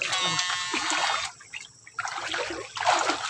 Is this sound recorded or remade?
recorded